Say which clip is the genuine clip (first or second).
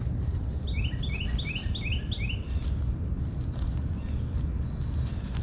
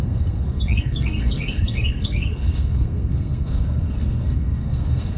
first